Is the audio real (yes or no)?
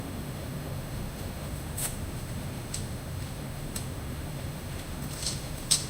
no